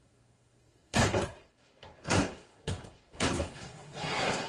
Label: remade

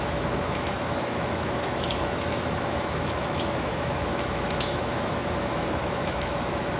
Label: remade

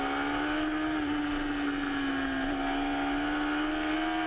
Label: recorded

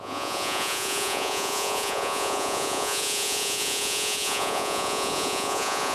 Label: remade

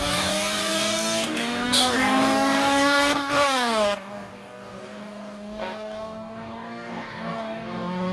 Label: remade